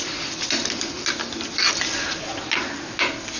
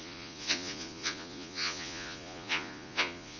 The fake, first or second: second